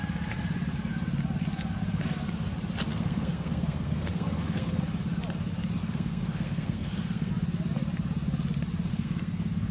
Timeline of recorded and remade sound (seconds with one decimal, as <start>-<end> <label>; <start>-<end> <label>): 0.0-2.9 recorded; 2.9-4.8 remade; 4.8-5.8 recorded; 5.8-7.3 remade; 7.3-8.9 recorded; 8.9-9.7 remade